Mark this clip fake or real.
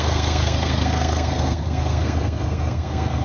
fake